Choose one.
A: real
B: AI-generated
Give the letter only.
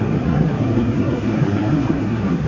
B